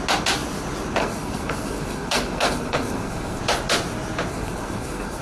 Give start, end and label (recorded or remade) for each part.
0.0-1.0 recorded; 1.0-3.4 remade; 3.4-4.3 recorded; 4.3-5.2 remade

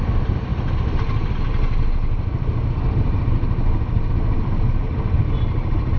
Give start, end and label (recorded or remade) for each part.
0.0-6.0 recorded

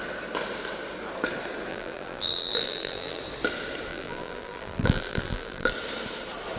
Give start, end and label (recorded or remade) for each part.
0.0-1.7 recorded; 1.7-3.2 remade; 3.2-3.9 recorded; 3.9-5.7 remade; 5.7-6.6 recorded

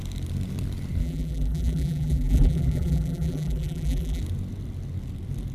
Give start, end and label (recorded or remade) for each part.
0.0-1.0 recorded; 1.0-4.2 remade; 4.2-5.5 recorded